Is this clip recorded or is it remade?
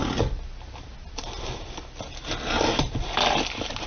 recorded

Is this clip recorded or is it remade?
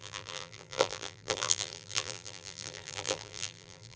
remade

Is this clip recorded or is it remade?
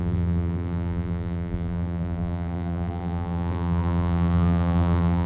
remade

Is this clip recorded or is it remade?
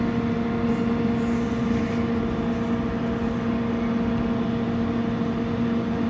recorded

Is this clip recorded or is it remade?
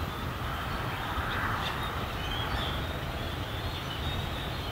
recorded